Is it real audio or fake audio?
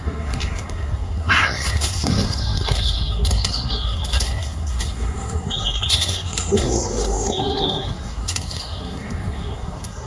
fake